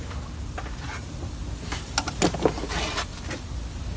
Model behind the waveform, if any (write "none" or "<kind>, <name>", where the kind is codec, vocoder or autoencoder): none